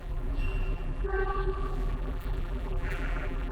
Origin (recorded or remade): remade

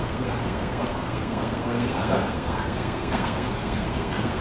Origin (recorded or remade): remade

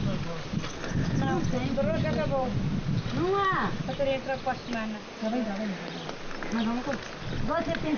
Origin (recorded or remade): recorded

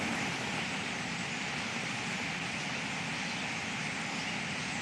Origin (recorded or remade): recorded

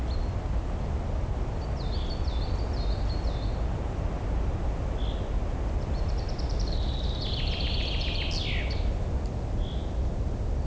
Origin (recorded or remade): recorded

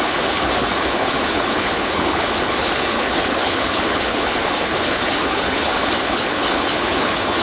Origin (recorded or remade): remade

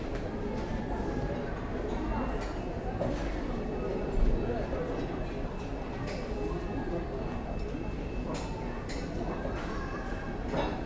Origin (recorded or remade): recorded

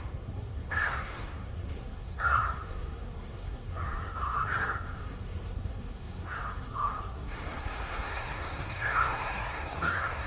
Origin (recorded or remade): remade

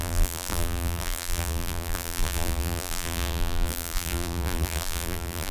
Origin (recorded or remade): remade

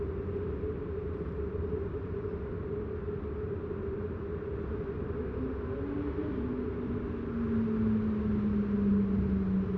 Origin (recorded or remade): recorded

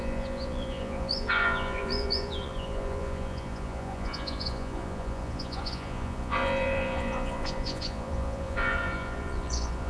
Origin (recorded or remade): remade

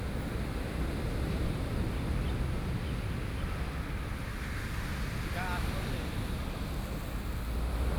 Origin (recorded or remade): recorded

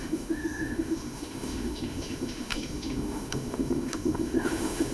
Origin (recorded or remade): remade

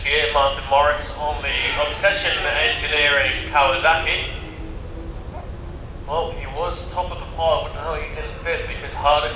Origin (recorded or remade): recorded